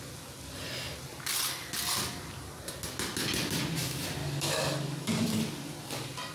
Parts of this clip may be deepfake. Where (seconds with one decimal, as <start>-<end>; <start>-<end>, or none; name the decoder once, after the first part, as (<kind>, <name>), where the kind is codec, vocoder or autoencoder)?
4.2-5.4 (codec, DAC)